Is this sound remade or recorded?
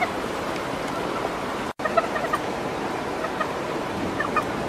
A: remade